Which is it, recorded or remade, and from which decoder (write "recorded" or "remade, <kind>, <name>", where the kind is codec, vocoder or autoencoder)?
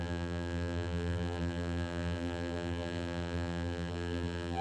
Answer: remade, vocoder, BigVGAN v2